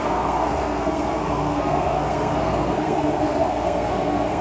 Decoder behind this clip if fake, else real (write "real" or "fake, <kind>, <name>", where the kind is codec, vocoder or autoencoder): fake, codec, SNAC